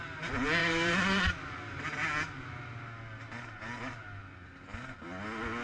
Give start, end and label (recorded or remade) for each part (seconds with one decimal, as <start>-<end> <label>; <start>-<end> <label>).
0.0-0.6 recorded; 0.6-1.3 remade; 1.3-5.6 recorded